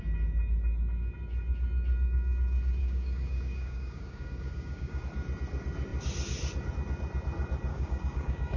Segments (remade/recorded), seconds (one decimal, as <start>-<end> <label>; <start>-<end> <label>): 0.0-2.8 recorded; 2.8-5.0 remade; 5.0-7.7 recorded; 7.7-8.6 remade